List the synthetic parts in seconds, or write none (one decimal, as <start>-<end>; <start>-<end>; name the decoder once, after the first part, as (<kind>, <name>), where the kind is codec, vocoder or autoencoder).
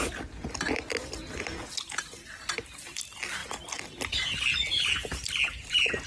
none